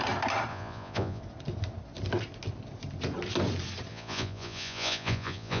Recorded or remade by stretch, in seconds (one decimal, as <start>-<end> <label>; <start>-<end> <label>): 0.0-0.5 recorded; 0.5-1.2 remade; 1.2-3.9 recorded; 3.9-5.6 remade